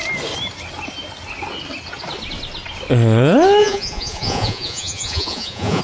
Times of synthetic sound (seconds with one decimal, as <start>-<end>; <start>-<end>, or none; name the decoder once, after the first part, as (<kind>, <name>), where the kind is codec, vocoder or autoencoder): 3.6-5.8 (vocoder, Vocos)